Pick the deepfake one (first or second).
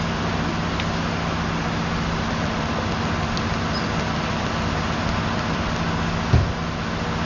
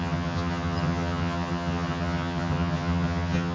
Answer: second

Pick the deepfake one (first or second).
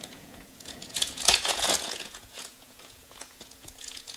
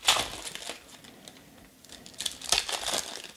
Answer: first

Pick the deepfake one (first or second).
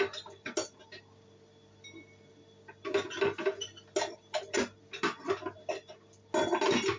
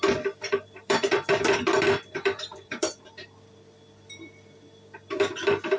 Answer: second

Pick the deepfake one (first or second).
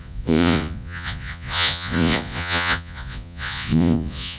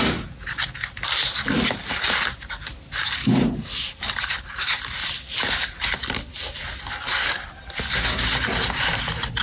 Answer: first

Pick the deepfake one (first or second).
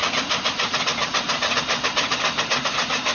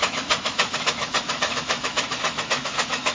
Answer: second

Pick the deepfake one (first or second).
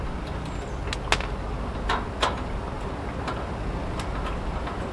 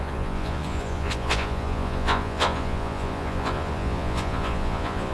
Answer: second